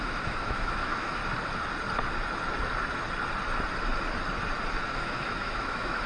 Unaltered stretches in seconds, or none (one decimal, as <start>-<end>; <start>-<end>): 1.2-4.9